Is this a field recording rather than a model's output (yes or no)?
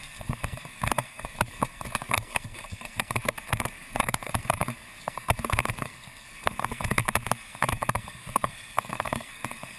no